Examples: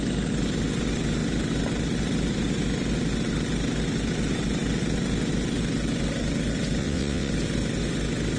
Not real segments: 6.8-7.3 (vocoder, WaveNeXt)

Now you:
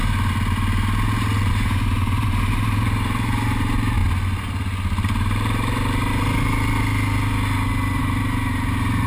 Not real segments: 1.5-4.0 (vocoder, BigVGAN v2); 8.0-9.1

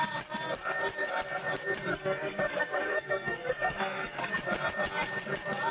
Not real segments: 1.9-4.3 (codec, SNAC)

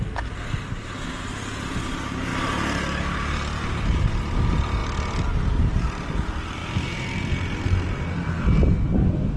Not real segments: none

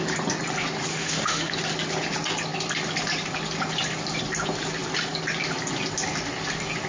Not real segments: 0.9-1.5 (autoencoder, DAC-VAE)